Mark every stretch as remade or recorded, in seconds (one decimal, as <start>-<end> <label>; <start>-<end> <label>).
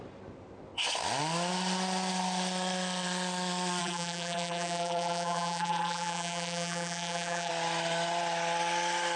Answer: 0.0-3.8 recorded; 3.8-7.5 remade; 7.5-9.2 recorded